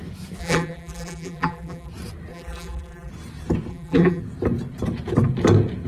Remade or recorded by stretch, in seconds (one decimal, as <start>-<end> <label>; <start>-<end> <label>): 0.0-0.4 recorded; 0.4-1.9 remade; 1.9-2.3 recorded; 2.3-3.1 remade; 3.1-3.7 recorded; 3.7-4.2 remade; 4.2-5.9 recorded